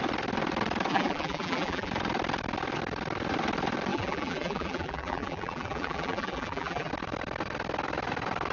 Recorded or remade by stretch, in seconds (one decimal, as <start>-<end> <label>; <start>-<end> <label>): 0.0-0.9 recorded; 0.9-1.9 remade; 1.9-3.9 recorded; 3.9-6.9 remade; 6.9-8.5 recorded